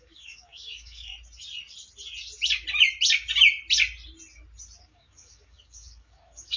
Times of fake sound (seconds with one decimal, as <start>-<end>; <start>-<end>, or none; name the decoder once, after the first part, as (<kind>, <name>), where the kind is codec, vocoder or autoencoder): 0.0-1.1 (codec, DAC); 4.8-6.6